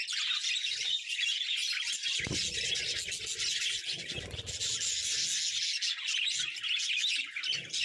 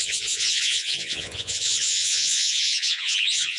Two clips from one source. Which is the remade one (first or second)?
second